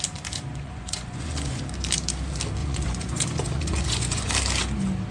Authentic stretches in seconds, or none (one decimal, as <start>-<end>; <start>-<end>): 0.0-0.5; 1.6-2.6; 4.3-5.1